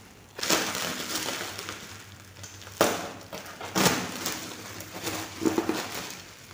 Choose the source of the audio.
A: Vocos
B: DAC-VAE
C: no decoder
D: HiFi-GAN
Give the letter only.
C